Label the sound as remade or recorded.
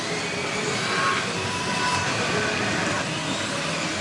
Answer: recorded